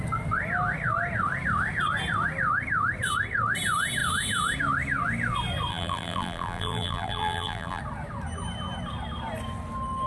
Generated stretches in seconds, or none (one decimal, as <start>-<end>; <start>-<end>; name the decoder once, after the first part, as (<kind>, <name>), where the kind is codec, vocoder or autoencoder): 5.7-7.8 (vocoder, BigVGAN v2)